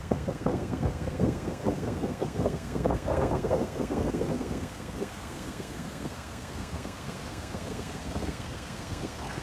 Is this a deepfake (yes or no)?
yes